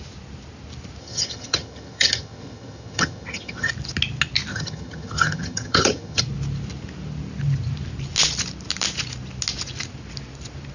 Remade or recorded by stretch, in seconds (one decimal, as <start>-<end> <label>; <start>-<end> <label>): 0.0-1.0 recorded; 1.0-3.7 remade; 3.7-4.5 recorded; 4.5-6.2 remade; 6.2-10.7 recorded